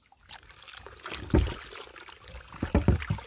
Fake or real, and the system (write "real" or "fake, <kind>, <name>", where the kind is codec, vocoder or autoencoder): real